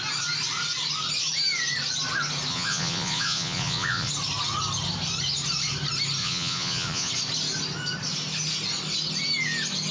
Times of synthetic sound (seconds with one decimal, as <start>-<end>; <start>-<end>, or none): 2.5-4.1; 6.2-7.1